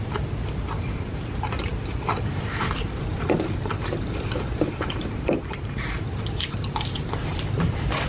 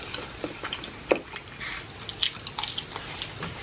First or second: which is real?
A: second